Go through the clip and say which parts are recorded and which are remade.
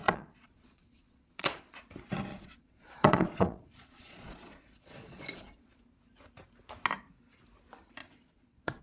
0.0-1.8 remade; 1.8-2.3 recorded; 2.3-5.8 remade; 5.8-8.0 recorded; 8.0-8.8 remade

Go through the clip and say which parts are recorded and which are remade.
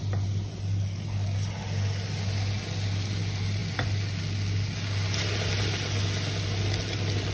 0.0-7.3 recorded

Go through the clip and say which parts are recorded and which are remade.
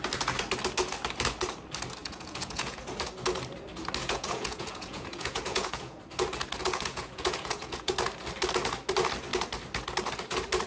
0.0-2.0 recorded; 2.0-2.8 remade; 2.8-4.0 recorded; 4.0-6.0 remade; 6.0-6.6 recorded; 6.6-7.9 remade; 7.9-10.7 recorded